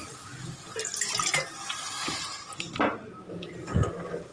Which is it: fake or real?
real